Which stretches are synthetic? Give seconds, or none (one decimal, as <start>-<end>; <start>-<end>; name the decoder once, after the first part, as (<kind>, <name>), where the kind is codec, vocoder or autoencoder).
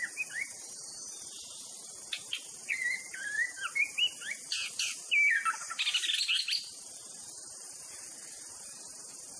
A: none